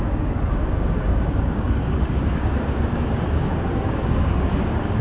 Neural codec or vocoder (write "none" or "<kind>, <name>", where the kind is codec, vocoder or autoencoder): codec, DAC